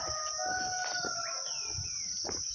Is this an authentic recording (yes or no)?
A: yes